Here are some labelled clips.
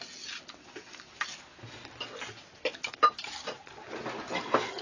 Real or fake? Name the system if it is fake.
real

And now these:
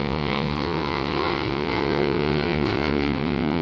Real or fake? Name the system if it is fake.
fake, vocoder, WaveNeXt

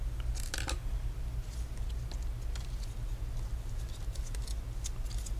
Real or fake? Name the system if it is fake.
real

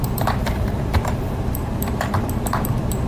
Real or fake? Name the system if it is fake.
fake, vocoder, BigVGAN v2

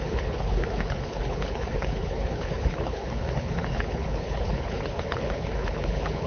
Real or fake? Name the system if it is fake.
fake, codec, HILCodec